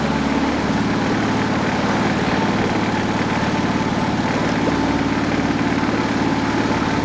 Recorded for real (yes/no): yes